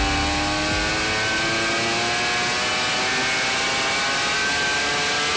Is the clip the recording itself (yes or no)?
yes